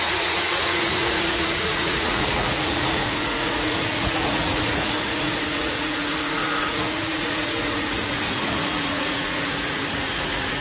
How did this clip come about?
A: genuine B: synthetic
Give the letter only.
B